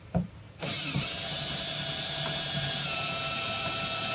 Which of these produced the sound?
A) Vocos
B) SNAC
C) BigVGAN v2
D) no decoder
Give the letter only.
C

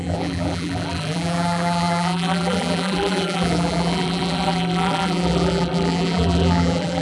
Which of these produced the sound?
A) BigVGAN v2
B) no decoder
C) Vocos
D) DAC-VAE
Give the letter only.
A